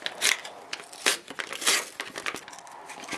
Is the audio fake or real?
real